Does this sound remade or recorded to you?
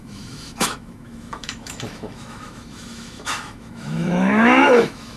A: remade